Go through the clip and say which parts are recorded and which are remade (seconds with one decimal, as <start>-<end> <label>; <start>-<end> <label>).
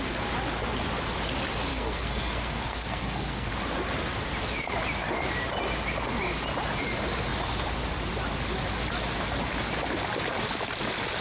0.0-1.7 recorded; 1.7-3.5 remade; 3.5-11.2 recorded